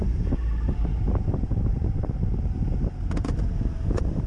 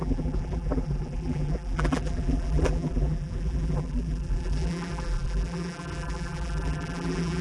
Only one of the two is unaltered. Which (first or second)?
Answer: first